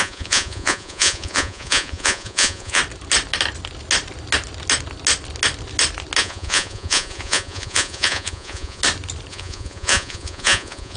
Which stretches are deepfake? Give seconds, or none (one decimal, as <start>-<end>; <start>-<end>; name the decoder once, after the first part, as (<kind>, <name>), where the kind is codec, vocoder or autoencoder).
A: 0.0-2.8 (vocoder, Vocos); 6.2-8.8; 9.3-11.0